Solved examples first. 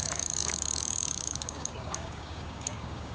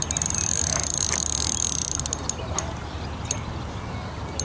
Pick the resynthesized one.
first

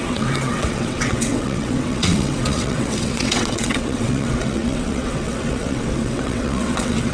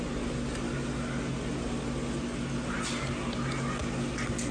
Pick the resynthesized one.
first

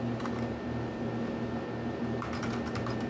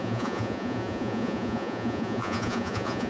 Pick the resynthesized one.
second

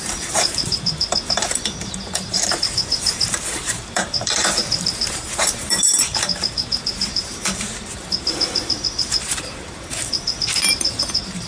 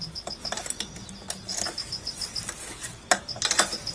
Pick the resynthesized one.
first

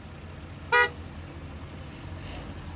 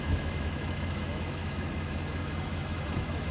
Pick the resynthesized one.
second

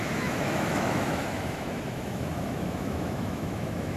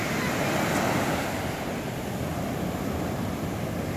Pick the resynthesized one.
first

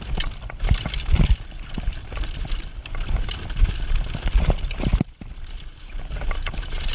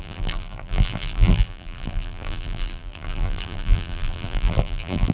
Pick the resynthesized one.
second